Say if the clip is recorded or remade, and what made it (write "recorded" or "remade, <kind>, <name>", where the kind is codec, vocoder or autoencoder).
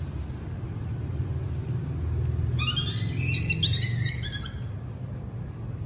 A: recorded